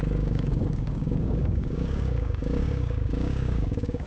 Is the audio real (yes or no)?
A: no